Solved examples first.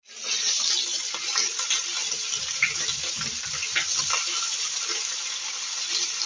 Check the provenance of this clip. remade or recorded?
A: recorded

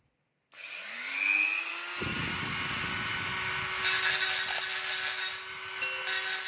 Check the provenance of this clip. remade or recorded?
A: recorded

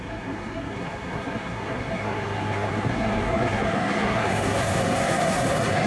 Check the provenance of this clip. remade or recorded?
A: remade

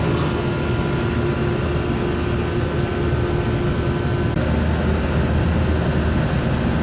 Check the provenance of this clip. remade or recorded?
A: recorded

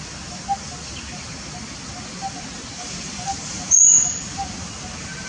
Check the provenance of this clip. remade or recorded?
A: recorded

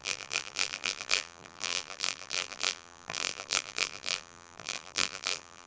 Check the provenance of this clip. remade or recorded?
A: remade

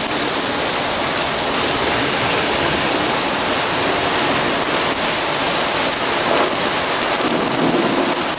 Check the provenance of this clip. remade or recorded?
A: recorded